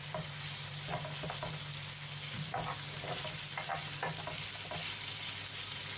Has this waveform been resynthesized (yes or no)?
no